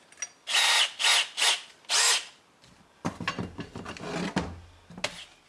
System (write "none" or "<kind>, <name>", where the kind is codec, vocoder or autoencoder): none